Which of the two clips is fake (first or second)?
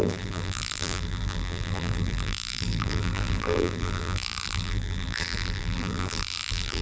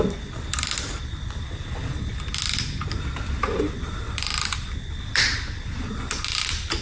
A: first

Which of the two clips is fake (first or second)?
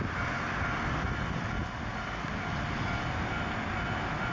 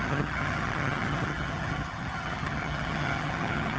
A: second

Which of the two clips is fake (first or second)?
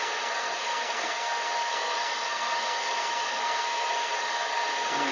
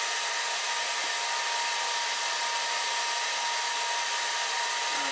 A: first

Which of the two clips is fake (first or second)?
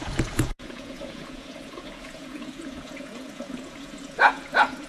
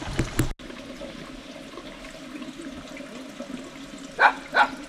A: first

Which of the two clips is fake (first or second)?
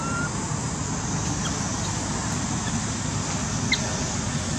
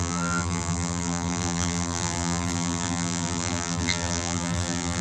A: second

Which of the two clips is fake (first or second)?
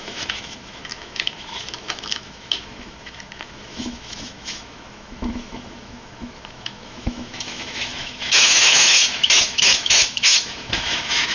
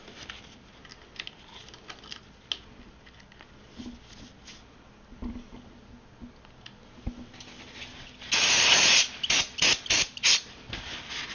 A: first